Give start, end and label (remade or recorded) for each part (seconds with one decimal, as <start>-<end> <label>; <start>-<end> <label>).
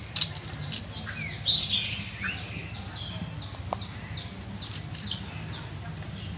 0.0-6.4 recorded